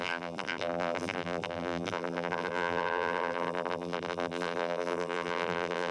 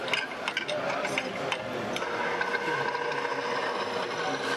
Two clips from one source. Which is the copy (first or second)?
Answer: first